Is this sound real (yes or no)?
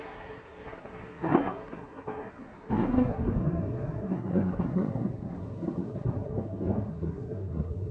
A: no